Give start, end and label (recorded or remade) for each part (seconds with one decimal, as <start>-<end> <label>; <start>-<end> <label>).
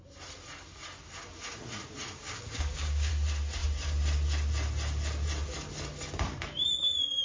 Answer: 0.0-2.2 recorded; 2.2-3.1 remade; 3.1-7.2 recorded